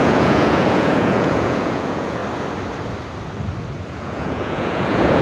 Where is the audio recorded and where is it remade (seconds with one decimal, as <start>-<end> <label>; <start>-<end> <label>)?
0.0-2.2 remade; 2.2-3.9 recorded; 3.9-5.2 remade

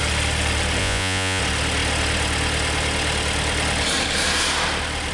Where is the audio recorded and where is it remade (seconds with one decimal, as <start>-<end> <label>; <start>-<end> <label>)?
0.0-0.8 recorded; 0.8-1.4 remade; 1.4-5.1 recorded

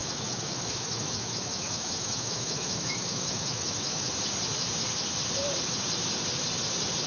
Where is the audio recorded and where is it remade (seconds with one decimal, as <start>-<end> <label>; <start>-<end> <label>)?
0.0-4.1 remade; 4.1-7.1 recorded

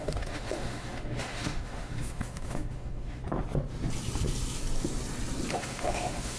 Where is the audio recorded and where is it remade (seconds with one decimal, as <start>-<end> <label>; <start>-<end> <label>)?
0.0-3.2 remade; 3.2-5.5 recorded; 5.5-6.4 remade

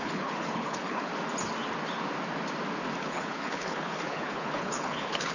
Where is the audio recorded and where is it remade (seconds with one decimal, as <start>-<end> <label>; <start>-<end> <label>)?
0.0-1.1 remade; 1.1-3.0 recorded; 3.0-5.3 remade

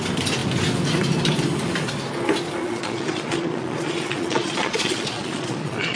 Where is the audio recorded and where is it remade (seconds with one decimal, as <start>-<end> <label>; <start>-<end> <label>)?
0.0-2.6 recorded; 2.6-6.0 remade

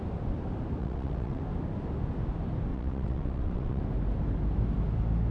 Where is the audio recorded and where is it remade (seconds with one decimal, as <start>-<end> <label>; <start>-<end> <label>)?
0.0-0.8 recorded; 0.8-1.4 remade; 1.4-2.7 recorded; 2.7-3.8 remade; 3.8-5.3 recorded

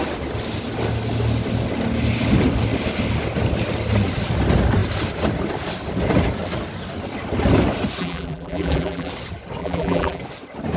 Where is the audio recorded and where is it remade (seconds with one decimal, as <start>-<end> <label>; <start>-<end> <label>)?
0.0-8.0 recorded; 8.0-9.1 remade; 9.1-9.6 recorded; 9.6-10.2 remade; 10.2-10.8 recorded